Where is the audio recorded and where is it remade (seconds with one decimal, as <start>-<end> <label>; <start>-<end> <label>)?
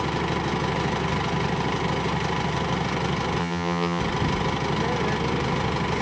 0.0-3.4 recorded; 3.4-4.0 remade; 4.0-6.0 recorded